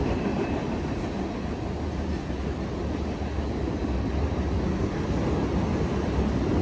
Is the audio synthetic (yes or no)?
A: no